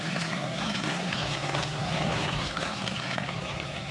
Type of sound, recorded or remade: remade